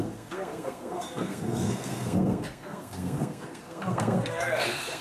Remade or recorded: remade